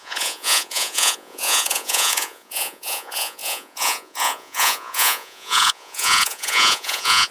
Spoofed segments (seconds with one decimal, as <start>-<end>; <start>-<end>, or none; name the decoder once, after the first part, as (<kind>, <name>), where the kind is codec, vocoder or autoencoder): 0.0-7.3 (vocoder, Vocos)